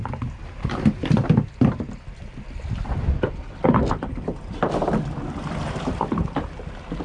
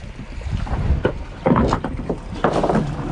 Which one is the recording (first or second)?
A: second